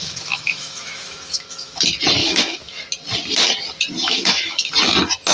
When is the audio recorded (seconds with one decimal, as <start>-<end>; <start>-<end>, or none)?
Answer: 1.8-2.2; 2.8-4.0; 4.7-5.3